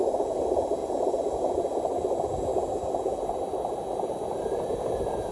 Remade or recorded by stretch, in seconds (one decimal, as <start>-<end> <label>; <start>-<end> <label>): 0.0-5.3 recorded